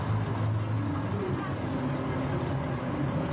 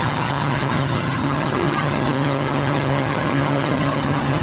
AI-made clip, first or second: second